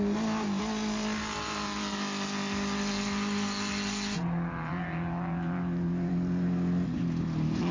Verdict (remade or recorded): recorded